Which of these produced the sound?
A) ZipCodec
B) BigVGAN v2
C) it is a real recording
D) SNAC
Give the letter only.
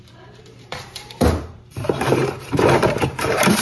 B